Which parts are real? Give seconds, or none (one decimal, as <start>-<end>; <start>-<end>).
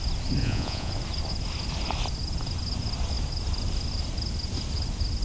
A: 0.0-0.4; 0.9-5.2